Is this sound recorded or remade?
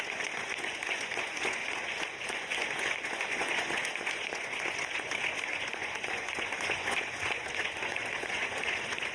remade